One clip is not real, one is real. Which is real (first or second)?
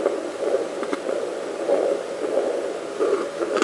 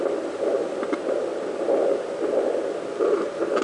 second